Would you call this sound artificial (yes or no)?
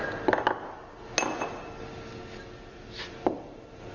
no